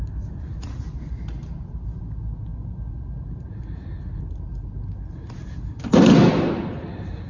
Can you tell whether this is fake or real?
real